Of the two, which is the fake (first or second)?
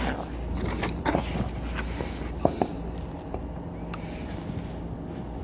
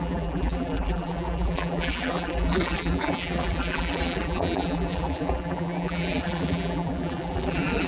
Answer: second